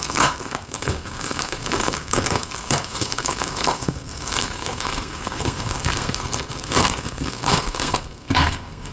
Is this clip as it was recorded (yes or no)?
no